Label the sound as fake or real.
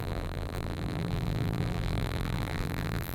fake